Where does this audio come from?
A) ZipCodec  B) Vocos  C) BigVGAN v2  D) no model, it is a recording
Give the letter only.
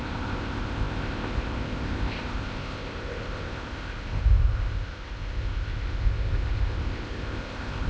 A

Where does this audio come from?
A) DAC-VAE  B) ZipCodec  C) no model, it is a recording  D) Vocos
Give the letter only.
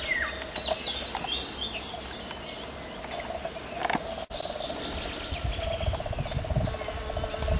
C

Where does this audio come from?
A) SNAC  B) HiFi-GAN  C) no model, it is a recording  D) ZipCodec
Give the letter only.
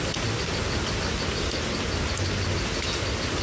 C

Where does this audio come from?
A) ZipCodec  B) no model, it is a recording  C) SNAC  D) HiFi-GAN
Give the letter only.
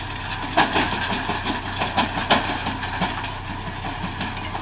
B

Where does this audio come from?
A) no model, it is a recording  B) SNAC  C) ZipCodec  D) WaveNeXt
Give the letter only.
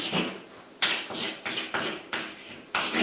A